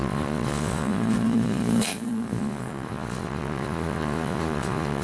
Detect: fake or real fake